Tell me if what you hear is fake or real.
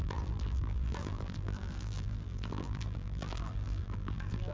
fake